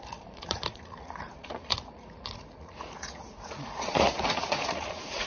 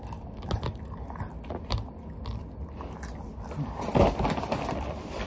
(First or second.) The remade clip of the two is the first